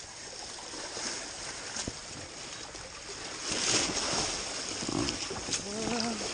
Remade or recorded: recorded